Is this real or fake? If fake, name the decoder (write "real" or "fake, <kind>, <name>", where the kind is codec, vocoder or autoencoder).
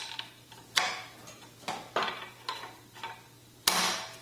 real